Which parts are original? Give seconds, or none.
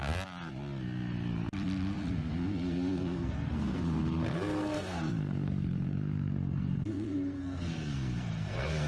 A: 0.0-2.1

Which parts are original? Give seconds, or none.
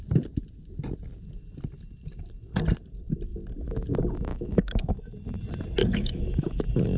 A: 0.0-4.3; 5.1-5.8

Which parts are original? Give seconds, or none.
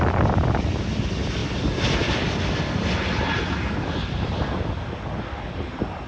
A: 0.0-6.1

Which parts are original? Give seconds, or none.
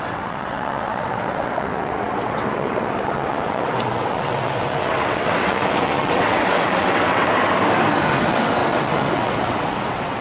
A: 7.3-8.1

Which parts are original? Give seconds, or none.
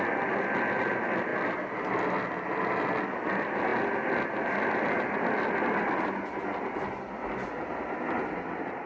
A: 0.0-8.9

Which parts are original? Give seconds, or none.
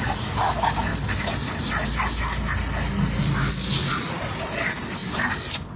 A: 0.0-3.8; 4.4-5.8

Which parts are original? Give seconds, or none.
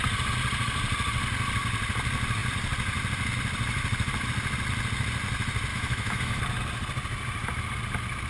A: 0.0-5.7; 6.4-8.3